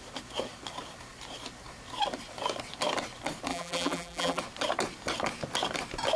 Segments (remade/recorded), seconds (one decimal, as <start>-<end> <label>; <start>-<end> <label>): 0.0-3.5 recorded; 3.5-4.4 remade; 4.4-6.2 recorded